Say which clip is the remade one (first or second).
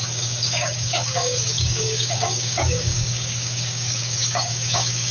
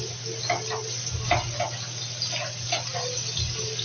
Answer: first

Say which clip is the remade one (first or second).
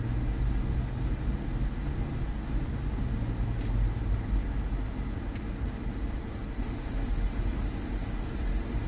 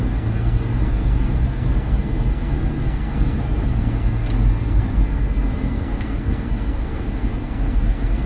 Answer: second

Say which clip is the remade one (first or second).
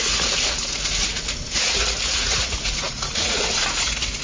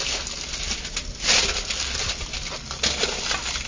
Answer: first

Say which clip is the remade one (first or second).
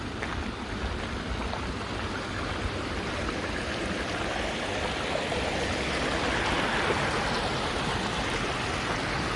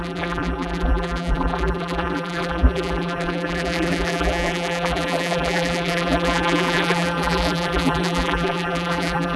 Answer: second